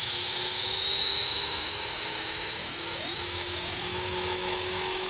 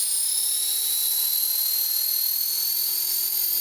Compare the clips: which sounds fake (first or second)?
first